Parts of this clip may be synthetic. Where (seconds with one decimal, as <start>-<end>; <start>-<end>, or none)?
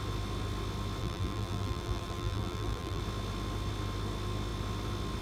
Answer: 1.0-3.0